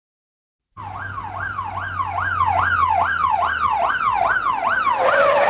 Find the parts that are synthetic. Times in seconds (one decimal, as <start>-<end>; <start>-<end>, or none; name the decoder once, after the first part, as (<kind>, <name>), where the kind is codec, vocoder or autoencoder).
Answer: none